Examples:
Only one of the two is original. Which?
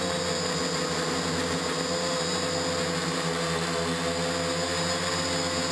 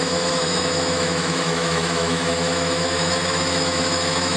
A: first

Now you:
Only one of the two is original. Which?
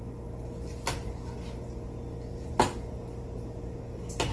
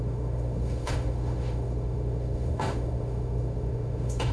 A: first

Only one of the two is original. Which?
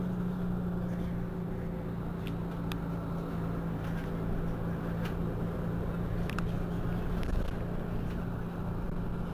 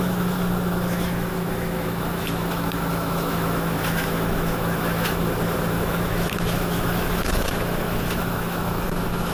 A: first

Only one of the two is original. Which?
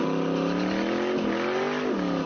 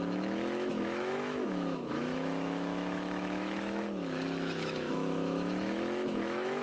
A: first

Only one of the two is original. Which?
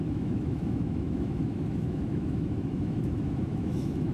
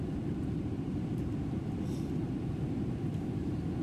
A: second